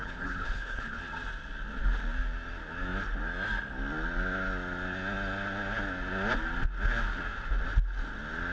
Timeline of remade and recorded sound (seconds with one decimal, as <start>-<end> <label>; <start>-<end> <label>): 0.0-1.0 remade; 1.0-8.5 recorded